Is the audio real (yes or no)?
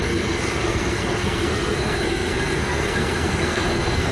no